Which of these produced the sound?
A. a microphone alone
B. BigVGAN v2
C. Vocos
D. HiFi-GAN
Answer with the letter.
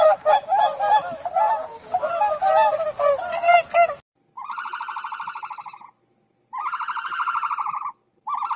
A